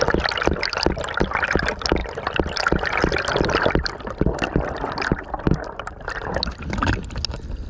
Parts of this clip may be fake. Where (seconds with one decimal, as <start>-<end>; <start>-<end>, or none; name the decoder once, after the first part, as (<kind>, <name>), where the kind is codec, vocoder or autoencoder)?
none